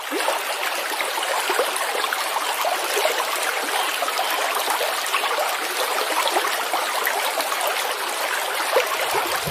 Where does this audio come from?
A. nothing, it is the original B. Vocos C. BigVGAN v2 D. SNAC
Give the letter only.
A